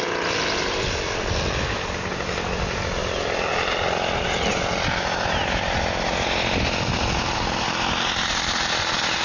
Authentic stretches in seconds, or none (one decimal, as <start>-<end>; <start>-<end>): 0.0-9.2